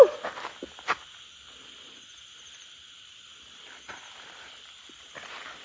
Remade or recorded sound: recorded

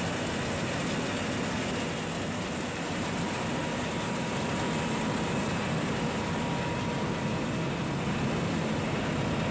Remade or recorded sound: recorded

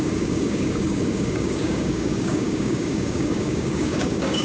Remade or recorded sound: remade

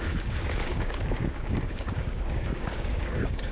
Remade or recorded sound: remade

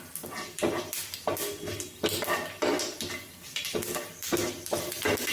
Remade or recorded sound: recorded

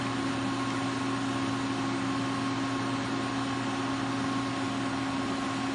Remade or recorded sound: recorded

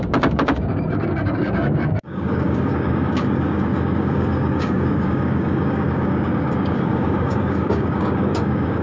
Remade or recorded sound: remade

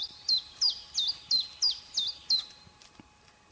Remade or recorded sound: recorded